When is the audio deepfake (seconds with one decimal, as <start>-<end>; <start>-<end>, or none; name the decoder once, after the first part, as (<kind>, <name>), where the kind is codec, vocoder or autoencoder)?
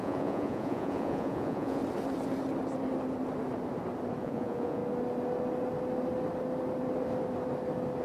0.0-1.8 (vocoder, Vocos); 4.2-4.8